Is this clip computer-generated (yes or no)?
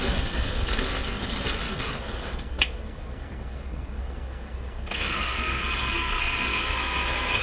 yes